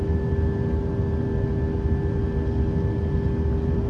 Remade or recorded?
recorded